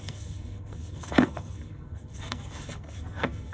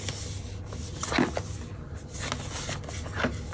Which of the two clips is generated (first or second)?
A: first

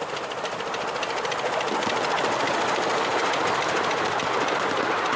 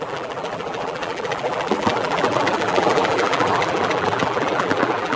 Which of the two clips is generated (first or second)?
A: second